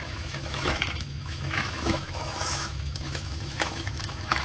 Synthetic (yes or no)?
yes